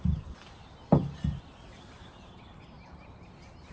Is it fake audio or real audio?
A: real